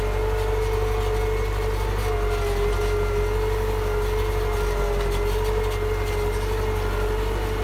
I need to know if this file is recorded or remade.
recorded